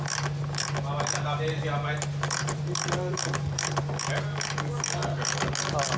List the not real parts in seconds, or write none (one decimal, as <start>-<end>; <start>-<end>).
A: 2.4-3.8